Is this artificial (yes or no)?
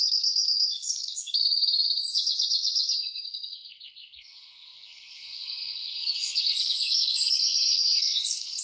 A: yes